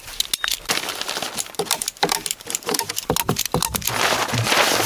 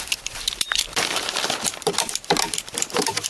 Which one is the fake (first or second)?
second